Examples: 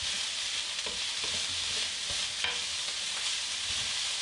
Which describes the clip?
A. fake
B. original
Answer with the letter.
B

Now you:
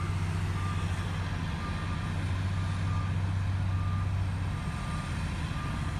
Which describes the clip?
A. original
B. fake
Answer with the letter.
A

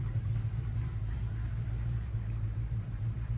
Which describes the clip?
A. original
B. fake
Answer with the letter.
B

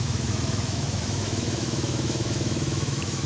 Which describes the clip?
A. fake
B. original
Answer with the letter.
A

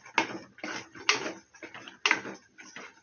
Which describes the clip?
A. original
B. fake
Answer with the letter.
A